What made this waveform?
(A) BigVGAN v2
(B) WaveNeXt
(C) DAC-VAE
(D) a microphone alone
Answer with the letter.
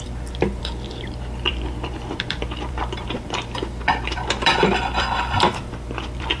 A